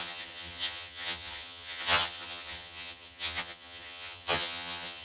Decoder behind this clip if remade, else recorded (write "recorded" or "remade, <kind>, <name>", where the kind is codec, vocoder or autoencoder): remade, vocoder, HiFi-GAN